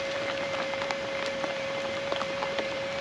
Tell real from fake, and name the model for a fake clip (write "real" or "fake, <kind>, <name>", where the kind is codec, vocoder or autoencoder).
fake, vocoder, BigVGAN v2